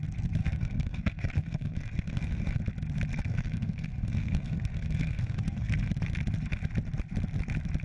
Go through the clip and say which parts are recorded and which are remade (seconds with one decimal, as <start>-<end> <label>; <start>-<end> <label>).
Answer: 0.0-0.4 recorded; 0.4-2.6 remade; 2.6-3.1 recorded; 3.1-5.9 remade; 5.9-7.8 recorded